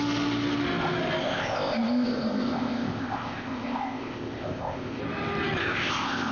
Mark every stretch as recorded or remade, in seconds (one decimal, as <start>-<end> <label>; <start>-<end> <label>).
0.0-1.2 recorded; 1.2-5.0 remade; 5.0-5.6 recorded; 5.6-6.3 remade